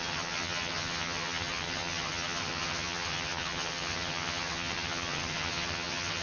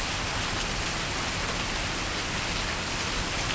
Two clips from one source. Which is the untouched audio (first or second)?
second